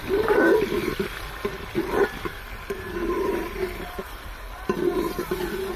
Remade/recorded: recorded